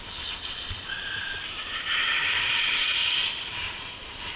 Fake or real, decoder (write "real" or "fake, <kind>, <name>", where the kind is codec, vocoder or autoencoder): fake, vocoder, BigVGAN v2